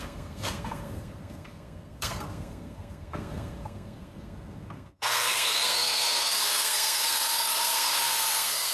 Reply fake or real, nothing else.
fake